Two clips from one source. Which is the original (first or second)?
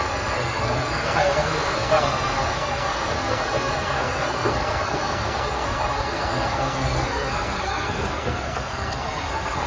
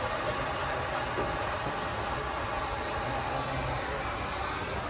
second